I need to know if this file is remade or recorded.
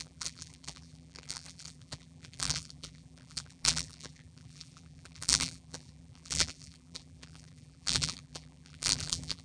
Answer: remade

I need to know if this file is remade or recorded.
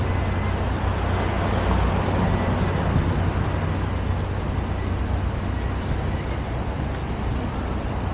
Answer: recorded